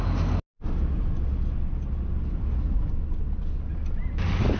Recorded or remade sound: recorded